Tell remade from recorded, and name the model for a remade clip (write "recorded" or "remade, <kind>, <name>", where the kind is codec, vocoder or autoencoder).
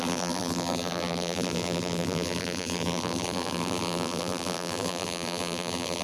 remade, vocoder, BigVGAN v2